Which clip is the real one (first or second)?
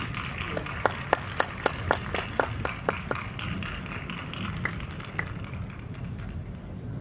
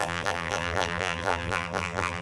first